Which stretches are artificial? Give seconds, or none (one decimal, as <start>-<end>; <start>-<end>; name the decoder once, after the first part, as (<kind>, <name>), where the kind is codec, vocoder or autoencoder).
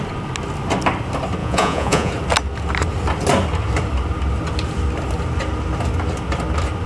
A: 1.4-2.1 (vocoder, Vocos)